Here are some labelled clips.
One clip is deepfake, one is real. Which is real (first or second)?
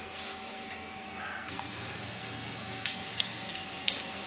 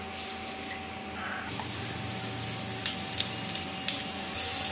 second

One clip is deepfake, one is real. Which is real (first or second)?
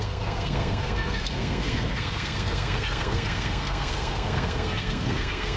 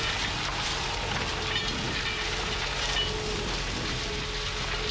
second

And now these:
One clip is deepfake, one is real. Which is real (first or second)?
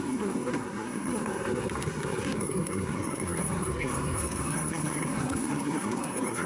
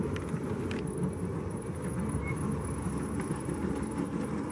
second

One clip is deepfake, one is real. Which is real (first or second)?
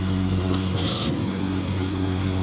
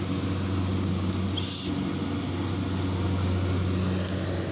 second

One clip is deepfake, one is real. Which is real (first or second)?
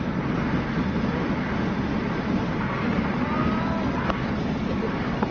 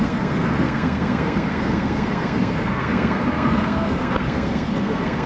first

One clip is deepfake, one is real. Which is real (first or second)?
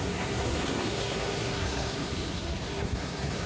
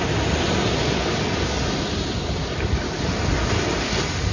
second